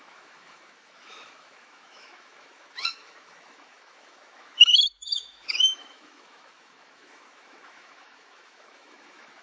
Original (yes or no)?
no